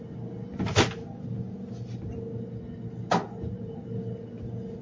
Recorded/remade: recorded